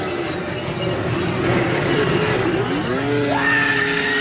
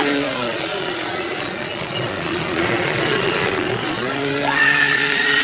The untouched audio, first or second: first